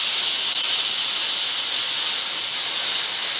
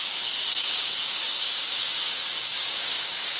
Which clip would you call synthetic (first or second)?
second